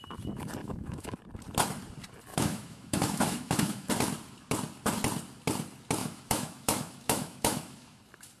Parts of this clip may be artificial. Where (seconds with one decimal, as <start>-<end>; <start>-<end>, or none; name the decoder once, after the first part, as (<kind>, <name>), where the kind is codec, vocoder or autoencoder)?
0.6-1.2 (autoencoder, DAC-VAE); 2.3-3.9; 6.0-8.0